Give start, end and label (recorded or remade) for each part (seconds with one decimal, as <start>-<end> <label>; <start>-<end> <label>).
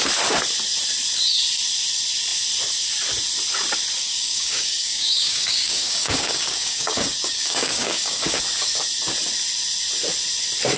0.0-4.0 recorded; 4.0-8.4 remade; 8.4-10.8 recorded